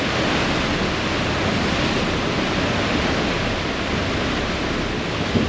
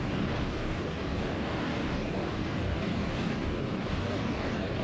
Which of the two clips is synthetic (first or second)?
second